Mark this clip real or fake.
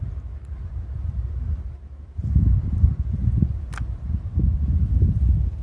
real